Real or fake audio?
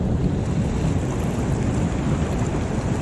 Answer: real